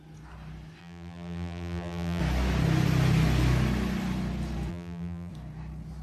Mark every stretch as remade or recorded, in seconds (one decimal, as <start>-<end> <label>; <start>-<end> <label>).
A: 0.0-0.8 recorded; 0.8-2.2 remade; 2.2-4.7 recorded; 4.7-5.3 remade; 5.3-6.0 recorded